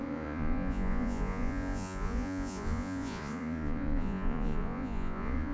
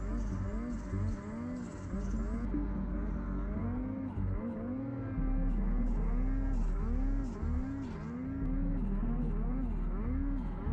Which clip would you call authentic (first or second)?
second